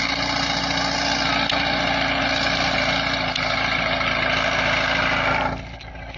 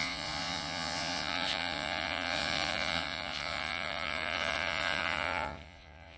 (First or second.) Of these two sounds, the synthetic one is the second